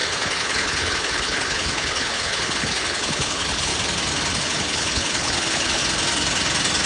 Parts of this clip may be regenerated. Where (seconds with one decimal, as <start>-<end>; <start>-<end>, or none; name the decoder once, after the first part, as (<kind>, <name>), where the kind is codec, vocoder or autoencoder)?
0.0-3.7 (codec, HILCodec); 4.4-5.8